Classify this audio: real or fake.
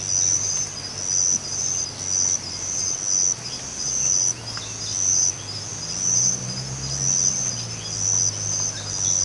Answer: real